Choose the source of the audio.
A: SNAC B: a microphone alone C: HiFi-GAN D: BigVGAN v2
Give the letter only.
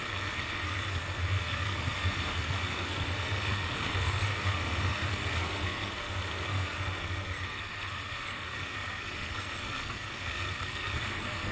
A